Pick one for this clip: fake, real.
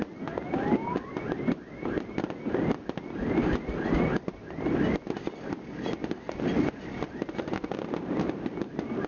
real